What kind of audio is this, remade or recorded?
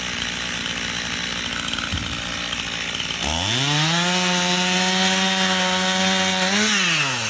recorded